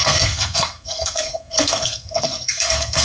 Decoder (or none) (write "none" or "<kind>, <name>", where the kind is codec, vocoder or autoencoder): codec, SNAC